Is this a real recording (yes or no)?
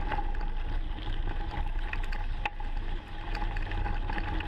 yes